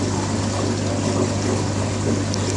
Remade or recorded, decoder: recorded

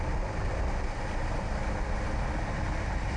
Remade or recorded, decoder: recorded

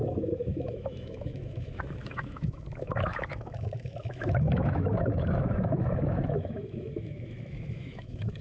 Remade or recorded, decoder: remade, autoencoder, DAC-VAE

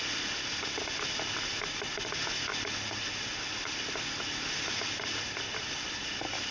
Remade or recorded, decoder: recorded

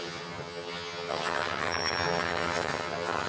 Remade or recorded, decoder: remade, vocoder, HiFi-GAN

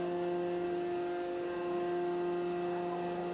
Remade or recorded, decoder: recorded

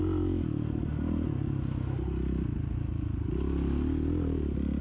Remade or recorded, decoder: recorded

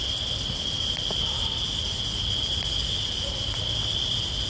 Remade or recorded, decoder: recorded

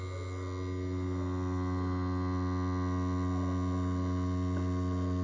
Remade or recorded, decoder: recorded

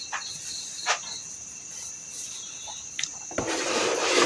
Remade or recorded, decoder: remade, vocoder, BigVGAN v2